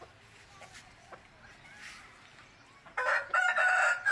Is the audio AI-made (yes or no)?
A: no